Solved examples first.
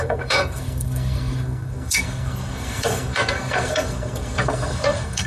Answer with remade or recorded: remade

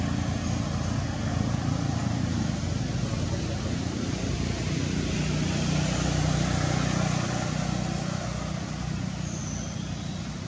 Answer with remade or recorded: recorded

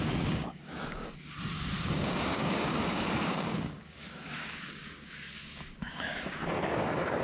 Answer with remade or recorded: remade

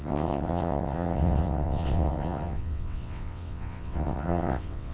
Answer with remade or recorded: remade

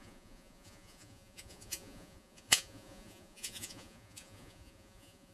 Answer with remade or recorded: remade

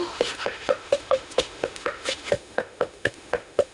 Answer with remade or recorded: remade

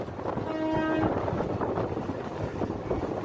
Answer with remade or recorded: recorded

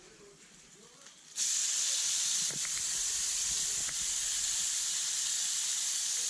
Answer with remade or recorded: recorded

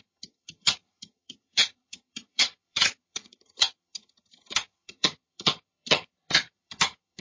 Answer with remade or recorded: remade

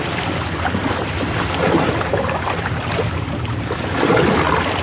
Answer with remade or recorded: remade